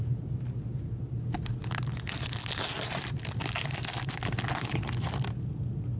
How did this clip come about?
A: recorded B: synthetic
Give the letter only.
A